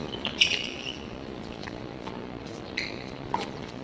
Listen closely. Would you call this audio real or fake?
fake